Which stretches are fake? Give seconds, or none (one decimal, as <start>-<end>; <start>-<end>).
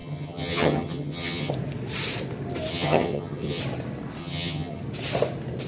0.0-1.5; 2.7-3.6; 4.2-4.8